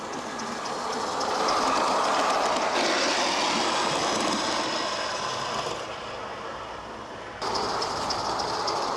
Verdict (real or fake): real